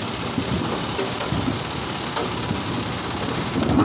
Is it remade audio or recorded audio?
recorded